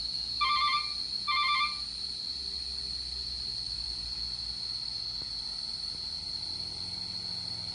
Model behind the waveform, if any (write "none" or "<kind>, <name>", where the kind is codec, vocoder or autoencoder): none